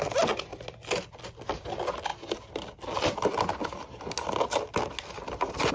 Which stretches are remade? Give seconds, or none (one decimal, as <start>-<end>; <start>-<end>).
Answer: none